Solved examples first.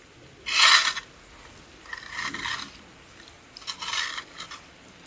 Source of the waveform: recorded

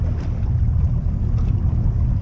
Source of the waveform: remade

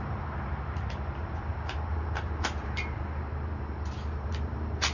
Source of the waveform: remade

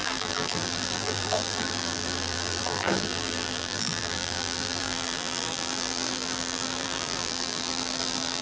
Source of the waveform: remade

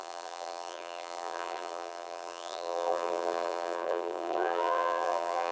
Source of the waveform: remade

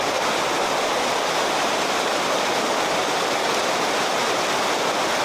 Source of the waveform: recorded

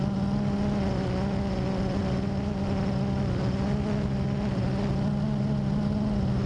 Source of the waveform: recorded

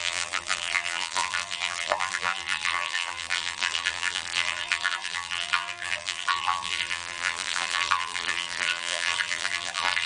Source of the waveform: remade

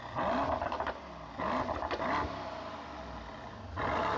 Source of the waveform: recorded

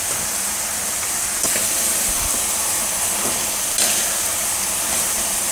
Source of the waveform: recorded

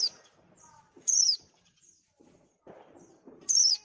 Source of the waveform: remade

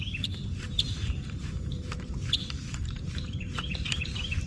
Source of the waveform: remade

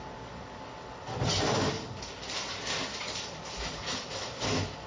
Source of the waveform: remade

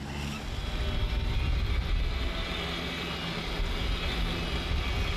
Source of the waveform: recorded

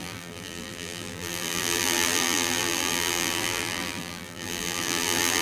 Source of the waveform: remade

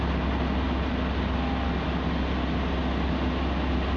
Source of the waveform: recorded